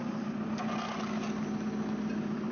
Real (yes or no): yes